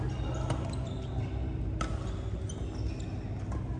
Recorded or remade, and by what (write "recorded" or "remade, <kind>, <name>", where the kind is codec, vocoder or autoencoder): recorded